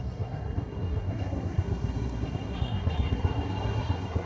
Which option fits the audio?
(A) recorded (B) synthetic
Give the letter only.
B